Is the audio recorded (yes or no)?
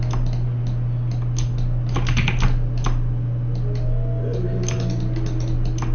yes